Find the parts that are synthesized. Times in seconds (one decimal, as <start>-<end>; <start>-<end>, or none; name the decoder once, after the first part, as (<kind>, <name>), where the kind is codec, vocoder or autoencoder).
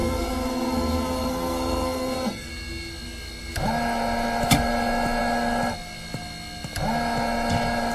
0.0-2.5 (codec, SNAC)